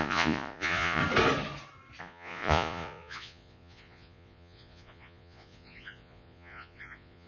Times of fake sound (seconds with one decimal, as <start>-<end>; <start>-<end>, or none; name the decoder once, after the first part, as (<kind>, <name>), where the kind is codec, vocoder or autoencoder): 0.0-1.0 (vocoder, Vocos); 2.0-7.3